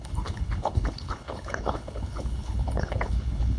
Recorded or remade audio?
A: remade